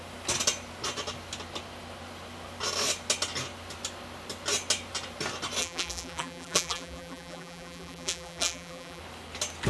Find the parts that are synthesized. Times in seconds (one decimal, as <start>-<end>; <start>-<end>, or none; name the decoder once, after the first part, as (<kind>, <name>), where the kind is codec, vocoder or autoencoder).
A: 5.6-9.0 (vocoder, BigVGAN v2)

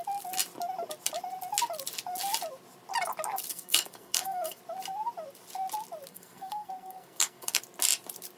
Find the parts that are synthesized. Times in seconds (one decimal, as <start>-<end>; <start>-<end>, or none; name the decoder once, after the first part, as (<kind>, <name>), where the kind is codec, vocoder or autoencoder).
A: 3.5-4.6 (codec, SNAC); 6.1-7.6

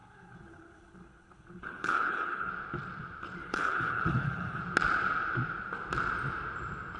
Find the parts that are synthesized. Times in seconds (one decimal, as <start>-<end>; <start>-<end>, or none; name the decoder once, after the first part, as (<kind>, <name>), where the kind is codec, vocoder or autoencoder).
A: 0.0-2.5 (codec, HILCodec); 3.4-4.6

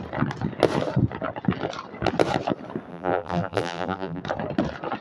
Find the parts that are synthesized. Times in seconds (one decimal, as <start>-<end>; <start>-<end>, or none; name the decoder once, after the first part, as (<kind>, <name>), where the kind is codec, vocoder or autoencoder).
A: 2.9-4.2 (vocoder, BigVGAN v2)

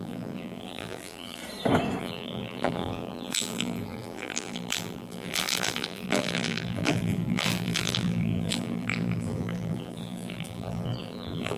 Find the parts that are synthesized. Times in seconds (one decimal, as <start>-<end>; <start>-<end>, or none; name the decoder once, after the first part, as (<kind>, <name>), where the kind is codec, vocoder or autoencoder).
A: 0.0-1.4 (vocoder, BigVGAN v2); 2.0-11.6